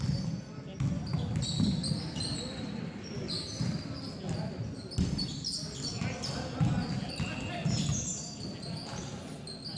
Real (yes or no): yes